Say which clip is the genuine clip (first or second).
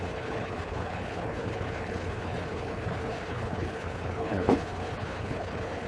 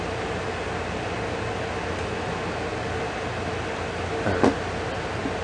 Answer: second